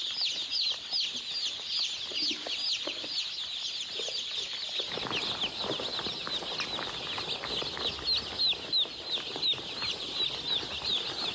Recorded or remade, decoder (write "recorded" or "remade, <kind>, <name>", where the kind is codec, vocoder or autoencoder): recorded